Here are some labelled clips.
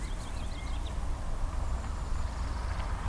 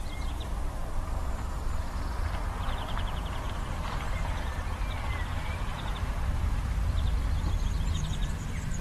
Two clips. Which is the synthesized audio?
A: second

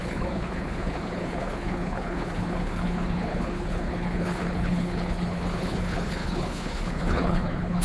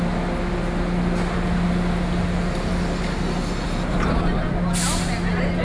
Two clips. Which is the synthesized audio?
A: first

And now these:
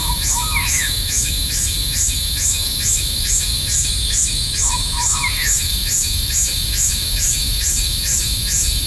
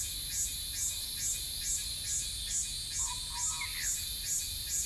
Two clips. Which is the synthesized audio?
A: first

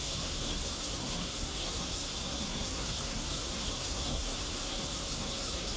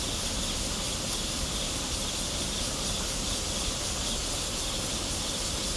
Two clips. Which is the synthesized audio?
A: first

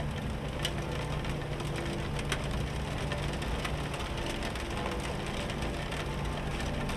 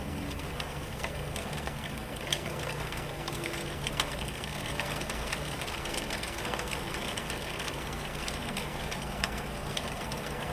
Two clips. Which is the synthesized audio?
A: second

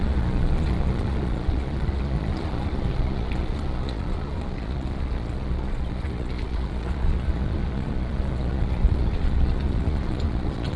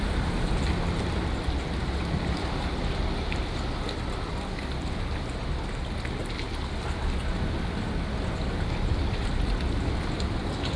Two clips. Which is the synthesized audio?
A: first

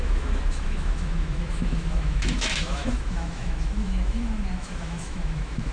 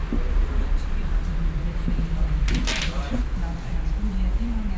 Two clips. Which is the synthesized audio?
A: first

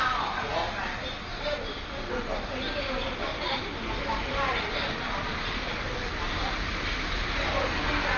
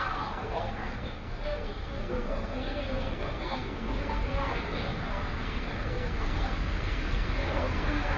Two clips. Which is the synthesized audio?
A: second